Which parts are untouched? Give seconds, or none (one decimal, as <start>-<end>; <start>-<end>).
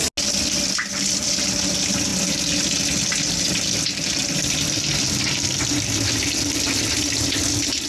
0.0-7.9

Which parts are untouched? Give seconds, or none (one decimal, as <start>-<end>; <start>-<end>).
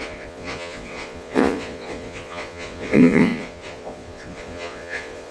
none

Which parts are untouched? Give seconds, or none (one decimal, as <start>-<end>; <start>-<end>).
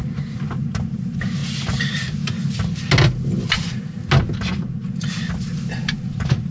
0.0-6.5